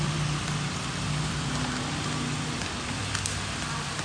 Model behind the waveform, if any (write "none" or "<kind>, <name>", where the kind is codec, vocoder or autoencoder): vocoder, BigVGAN v2